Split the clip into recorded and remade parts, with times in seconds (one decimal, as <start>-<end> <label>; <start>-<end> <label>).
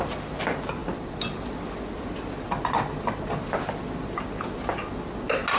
0.0-5.6 recorded